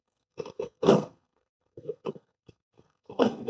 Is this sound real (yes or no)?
no